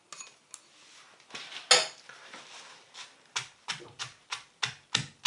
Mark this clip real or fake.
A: real